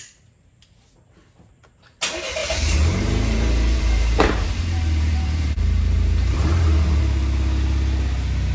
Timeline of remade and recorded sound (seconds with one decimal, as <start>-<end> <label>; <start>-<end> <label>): 0.0-2.4 recorded; 2.4-7.0 remade; 7.0-8.5 recorded